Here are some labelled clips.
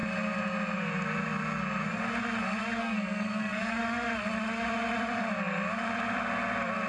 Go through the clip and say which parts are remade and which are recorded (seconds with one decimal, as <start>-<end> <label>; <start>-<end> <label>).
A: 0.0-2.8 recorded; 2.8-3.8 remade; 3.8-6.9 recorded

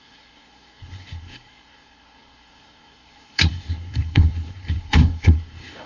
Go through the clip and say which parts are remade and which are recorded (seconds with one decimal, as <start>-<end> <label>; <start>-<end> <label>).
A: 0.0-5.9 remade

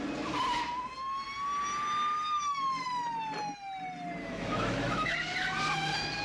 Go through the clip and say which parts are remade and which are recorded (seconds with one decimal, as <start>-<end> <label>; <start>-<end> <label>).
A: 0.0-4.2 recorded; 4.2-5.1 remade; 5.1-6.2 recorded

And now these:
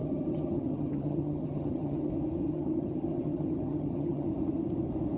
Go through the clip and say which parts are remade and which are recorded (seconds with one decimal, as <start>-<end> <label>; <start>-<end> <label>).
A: 0.0-2.1 remade; 2.1-2.5 recorded; 2.5-4.3 remade; 4.3-5.2 recorded